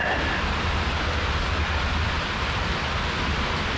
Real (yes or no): yes